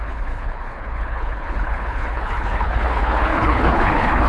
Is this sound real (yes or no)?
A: no